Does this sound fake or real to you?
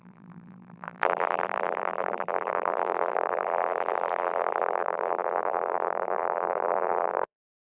fake